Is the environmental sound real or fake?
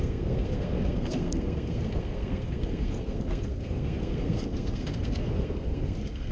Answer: fake